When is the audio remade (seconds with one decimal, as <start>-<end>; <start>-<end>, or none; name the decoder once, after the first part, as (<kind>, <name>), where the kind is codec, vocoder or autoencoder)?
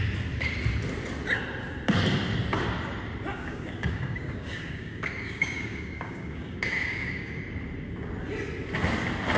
3.3-7.4 (codec, DAC)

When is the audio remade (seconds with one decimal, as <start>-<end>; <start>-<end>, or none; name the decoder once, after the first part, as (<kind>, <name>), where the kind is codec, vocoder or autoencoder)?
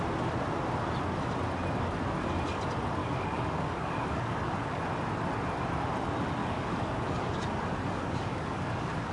3.0-4.8 (codec, DAC); 6.4-9.1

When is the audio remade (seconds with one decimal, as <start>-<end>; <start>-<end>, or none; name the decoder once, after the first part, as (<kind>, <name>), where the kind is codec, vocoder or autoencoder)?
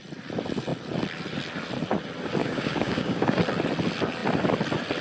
2.4-3.4 (codec, DAC)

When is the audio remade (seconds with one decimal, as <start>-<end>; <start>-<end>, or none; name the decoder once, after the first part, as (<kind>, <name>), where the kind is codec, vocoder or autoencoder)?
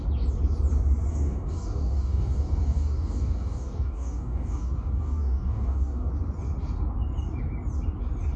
1.1-6.1 (codec, DAC)